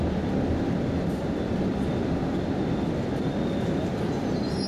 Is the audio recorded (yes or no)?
yes